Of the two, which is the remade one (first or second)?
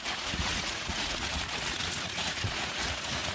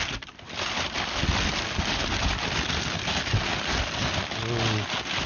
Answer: first